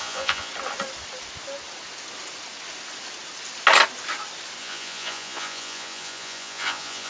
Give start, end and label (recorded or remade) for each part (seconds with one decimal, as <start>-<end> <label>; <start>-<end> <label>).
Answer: 0.0-0.5 remade; 0.5-4.6 recorded; 4.6-7.1 remade